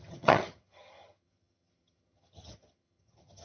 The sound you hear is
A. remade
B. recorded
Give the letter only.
A